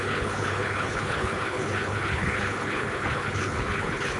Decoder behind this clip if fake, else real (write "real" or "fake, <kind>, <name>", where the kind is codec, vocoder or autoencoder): fake, codec, HILCodec